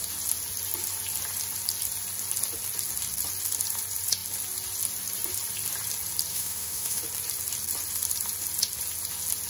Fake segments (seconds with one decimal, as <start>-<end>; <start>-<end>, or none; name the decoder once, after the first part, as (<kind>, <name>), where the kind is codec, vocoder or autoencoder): 6.3-7.0 (autoencoder, DAC-VAE)